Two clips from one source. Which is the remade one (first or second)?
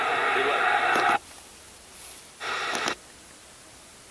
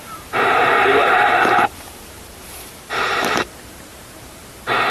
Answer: second